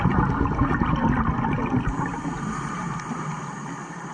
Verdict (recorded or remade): recorded